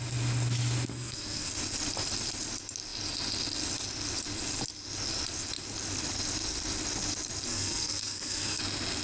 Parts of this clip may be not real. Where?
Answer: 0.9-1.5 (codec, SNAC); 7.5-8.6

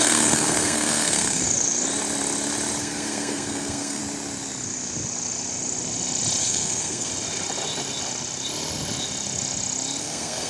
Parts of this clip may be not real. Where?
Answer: 0.0-1.4 (codec, SNAC); 2.8-4.0; 6.4-7.1; 10.0-10.5

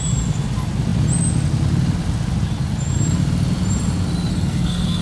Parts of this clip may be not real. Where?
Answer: 4.3-5.0 (codec, SNAC)